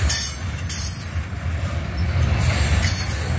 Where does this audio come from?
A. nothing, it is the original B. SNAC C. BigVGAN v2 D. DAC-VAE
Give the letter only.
A